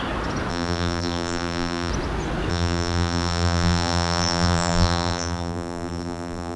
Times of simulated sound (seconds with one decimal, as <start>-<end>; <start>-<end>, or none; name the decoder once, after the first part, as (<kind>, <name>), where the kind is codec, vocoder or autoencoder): 0.5-1.9 (vocoder, BigVGAN v2); 2.5-6.6